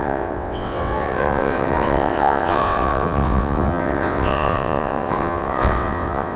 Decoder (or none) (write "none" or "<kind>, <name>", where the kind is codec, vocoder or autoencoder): vocoder, WaveNeXt